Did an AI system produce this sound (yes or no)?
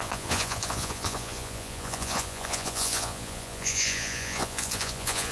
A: yes